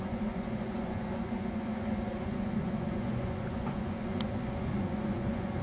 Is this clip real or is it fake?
fake